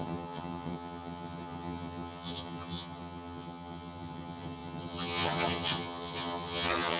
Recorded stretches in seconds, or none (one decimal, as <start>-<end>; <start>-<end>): none